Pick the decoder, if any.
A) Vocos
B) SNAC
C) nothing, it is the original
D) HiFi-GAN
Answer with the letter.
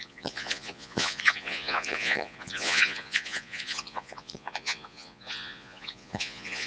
A